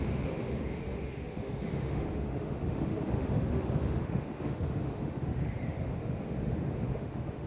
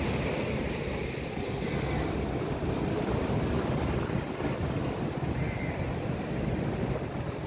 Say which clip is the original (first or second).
second